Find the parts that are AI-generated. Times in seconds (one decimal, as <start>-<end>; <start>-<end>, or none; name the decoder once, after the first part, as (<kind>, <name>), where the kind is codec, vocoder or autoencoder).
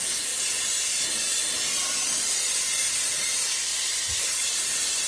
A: 3.7-5.1 (vocoder, BigVGAN v2)